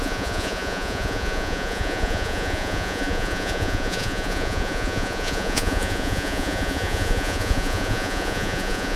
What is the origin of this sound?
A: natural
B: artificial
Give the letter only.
B